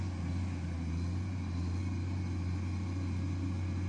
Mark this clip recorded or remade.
recorded